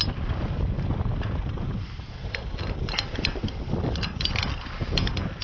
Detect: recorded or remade remade